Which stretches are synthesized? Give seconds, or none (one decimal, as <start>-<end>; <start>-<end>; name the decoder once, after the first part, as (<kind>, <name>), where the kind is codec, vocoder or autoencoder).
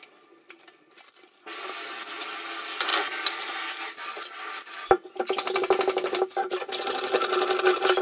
none